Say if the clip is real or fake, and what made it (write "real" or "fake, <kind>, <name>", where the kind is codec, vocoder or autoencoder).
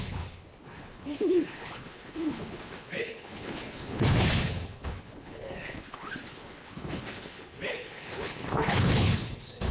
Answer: fake, codec, HILCodec